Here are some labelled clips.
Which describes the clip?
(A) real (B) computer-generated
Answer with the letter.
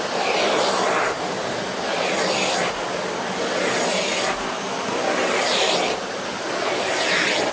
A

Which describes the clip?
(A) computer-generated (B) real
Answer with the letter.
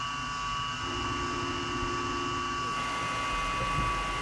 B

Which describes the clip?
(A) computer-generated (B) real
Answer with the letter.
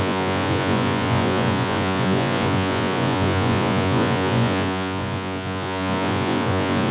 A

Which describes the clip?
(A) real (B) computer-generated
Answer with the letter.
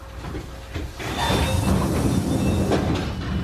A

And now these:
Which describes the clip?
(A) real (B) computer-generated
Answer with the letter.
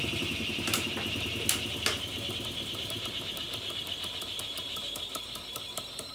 A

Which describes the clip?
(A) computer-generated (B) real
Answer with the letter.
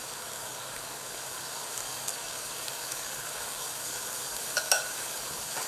A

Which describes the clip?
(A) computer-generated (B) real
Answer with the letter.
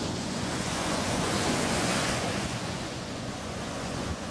A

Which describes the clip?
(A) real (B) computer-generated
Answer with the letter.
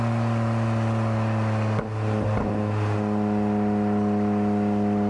A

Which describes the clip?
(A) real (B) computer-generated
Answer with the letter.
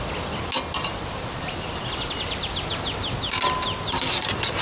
A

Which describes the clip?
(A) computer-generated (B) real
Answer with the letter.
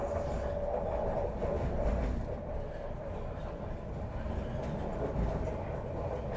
B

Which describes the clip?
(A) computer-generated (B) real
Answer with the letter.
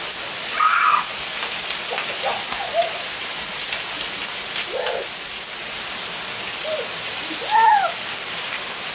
B